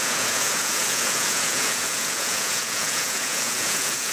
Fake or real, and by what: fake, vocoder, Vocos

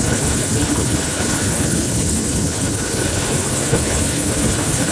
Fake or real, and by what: fake, codec, HILCodec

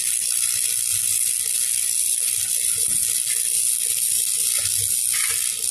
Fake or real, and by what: real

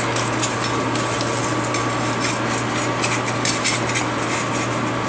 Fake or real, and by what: real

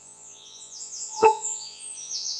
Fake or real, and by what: fake, vocoder, Vocos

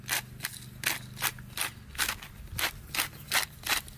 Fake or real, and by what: real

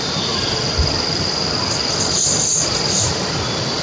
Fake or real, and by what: fake, vocoder, BigVGAN v2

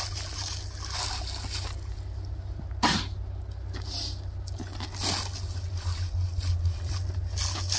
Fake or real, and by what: real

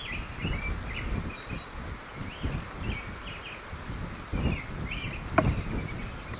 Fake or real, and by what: real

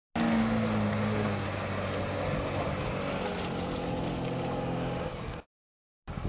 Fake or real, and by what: real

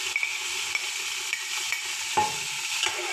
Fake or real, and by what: real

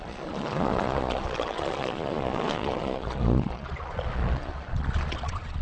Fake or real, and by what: fake, vocoder, Vocos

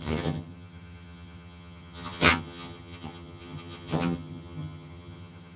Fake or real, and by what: fake, vocoder, HiFi-GAN